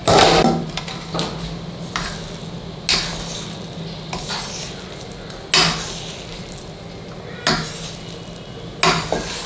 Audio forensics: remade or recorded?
recorded